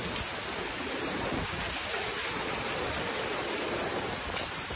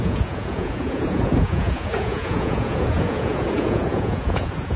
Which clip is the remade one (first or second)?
second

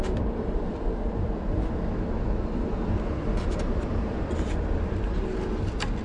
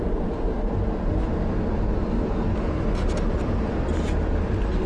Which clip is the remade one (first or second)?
first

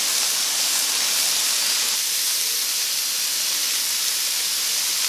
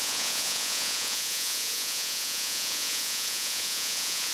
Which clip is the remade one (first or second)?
second